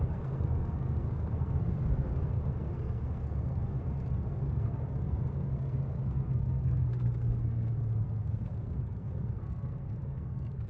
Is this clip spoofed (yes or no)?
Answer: yes